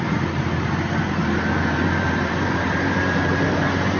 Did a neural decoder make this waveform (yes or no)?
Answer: yes